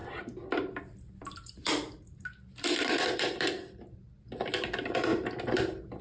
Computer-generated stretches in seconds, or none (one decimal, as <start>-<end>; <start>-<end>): 0.8-5.1

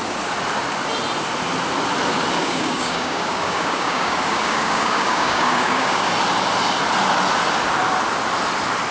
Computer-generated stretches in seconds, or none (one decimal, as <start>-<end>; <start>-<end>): 2.4-6.1

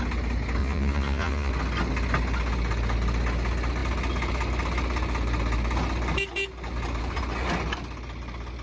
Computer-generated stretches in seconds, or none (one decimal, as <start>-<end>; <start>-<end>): 0.6-1.5

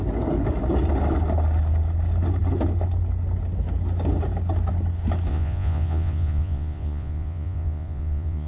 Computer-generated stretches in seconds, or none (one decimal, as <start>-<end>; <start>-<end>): 5.3-8.5